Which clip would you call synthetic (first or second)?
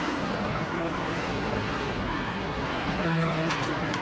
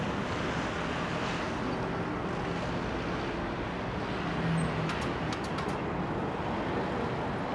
first